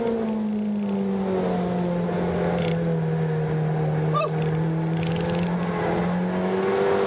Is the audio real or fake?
real